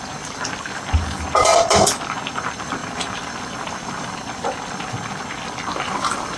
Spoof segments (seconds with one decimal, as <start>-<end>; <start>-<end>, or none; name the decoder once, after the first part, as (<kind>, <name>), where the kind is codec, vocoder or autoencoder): 0.0-1.5 (vocoder, BigVGAN v2); 2.3-6.4